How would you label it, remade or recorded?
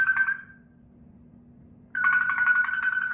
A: recorded